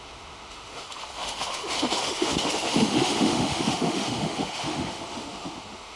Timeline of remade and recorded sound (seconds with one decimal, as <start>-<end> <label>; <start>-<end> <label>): 0.0-6.0 remade